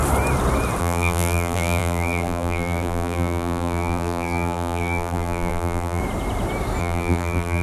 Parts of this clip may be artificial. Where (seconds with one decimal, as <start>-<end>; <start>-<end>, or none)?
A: 0.8-6.0; 6.8-7.6